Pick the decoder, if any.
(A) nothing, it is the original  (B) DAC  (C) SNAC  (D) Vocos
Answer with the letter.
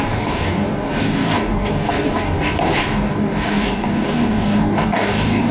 B